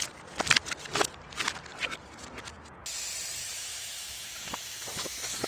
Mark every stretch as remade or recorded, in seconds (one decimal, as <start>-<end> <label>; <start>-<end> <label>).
0.0-3.4 recorded; 3.4-5.5 remade